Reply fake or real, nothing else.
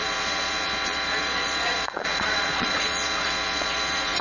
fake